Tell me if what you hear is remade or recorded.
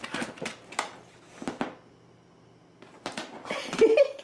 recorded